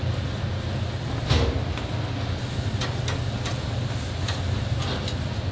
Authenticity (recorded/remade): recorded